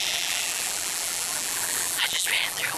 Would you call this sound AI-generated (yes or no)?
yes